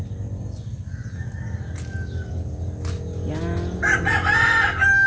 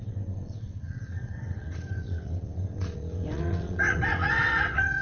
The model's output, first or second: second